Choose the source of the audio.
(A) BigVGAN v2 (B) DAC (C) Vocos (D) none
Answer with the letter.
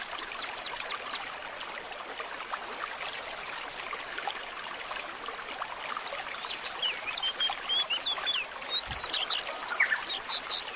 D